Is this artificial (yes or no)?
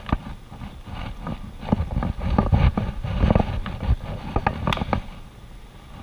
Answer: no